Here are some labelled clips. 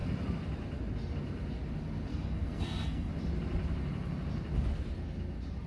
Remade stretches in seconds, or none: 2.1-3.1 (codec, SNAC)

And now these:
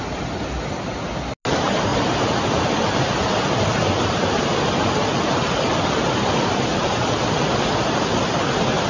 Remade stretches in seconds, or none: none

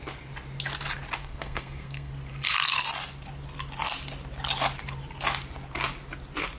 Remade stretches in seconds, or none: 1.2-2.1 (codec, SNAC)

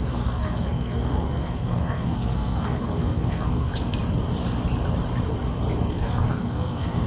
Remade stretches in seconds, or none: 0.0-3.7 (codec, SNAC); 5.9-7.1